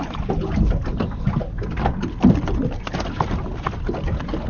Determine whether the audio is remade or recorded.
recorded